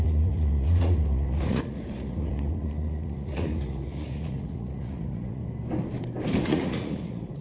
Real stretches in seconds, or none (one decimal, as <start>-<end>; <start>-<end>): 5.4-6.4